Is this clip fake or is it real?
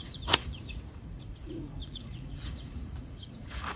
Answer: fake